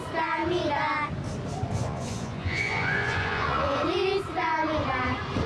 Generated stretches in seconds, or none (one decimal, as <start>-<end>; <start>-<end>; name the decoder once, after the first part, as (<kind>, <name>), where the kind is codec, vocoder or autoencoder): 1.7-3.8 (vocoder, Vocos)